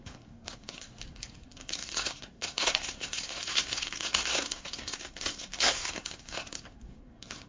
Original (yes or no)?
no